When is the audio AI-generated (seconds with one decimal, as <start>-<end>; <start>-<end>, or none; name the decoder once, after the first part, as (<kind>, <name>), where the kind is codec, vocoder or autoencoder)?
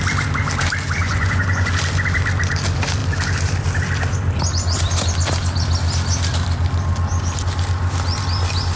1.0-1.7 (vocoder, Vocos)